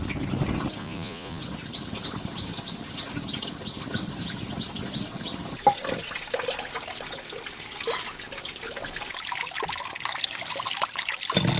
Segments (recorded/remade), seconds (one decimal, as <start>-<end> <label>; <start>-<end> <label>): 0.0-0.8 recorded; 0.8-1.4 remade; 1.4-11.6 recorded